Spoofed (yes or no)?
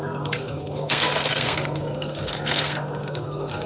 yes